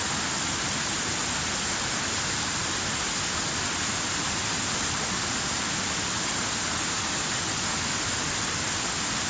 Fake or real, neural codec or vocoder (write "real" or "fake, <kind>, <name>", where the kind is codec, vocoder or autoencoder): real